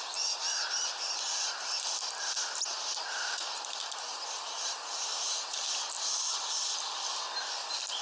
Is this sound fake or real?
real